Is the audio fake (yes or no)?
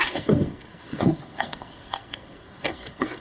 yes